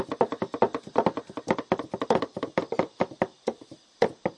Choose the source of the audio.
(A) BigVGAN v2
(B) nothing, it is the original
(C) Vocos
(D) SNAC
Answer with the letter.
B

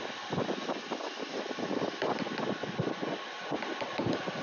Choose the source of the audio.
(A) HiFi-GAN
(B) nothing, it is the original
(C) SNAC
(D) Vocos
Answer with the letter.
B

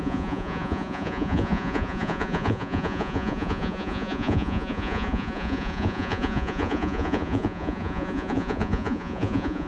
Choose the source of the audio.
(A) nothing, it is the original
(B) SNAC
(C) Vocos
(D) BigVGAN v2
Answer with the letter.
C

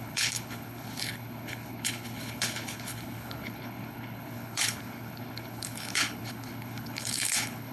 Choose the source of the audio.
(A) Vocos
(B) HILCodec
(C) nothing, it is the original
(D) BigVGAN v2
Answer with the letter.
B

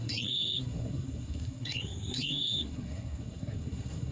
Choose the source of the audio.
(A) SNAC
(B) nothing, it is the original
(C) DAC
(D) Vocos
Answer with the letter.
A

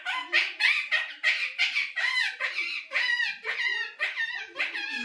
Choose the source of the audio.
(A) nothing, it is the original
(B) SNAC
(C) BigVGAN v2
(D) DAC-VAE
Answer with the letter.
A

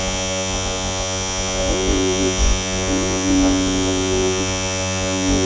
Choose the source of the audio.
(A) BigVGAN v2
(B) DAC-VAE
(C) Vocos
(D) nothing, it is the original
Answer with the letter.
C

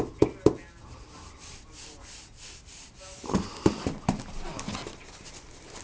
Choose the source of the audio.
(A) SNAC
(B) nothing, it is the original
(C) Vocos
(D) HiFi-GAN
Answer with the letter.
B